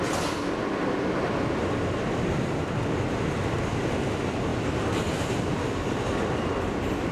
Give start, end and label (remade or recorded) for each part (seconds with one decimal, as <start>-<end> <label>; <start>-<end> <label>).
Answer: 0.0-7.1 recorded